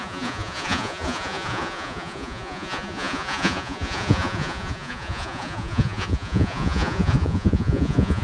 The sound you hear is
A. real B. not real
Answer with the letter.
B